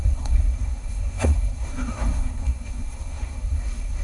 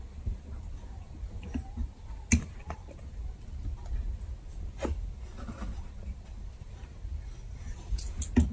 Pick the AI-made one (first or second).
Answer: first